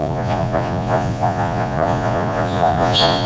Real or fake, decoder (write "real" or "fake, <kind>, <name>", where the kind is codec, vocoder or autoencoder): fake, vocoder, Vocos